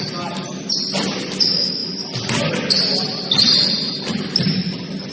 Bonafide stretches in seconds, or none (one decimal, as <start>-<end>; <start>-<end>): 0.0-5.1